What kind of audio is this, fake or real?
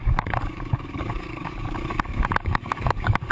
fake